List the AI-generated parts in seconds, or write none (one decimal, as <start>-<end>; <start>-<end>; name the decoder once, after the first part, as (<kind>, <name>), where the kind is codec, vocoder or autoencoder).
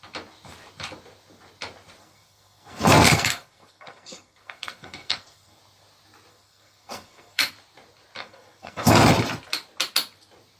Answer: 2.0-5.6 (codec, SNAC); 6.3-7.5; 8.2-9.1